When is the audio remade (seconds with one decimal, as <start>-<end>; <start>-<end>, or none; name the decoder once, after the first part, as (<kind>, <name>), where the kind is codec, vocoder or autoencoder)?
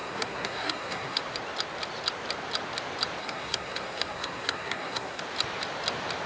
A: 0.0-1.2 (codec, SNAC); 3.2-5.2